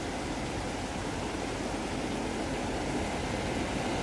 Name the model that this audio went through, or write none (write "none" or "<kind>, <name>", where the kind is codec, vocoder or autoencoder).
none